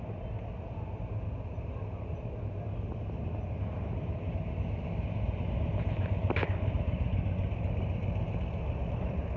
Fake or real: real